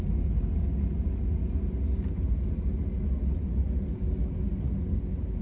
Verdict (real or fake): real